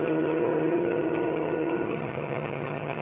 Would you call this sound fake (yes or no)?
yes